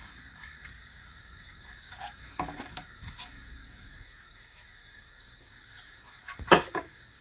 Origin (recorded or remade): remade